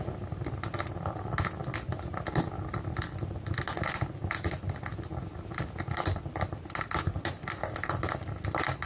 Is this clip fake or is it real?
real